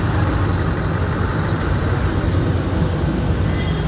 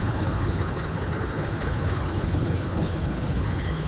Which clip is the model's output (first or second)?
second